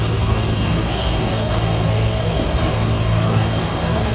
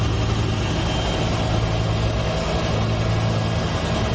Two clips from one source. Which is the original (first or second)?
second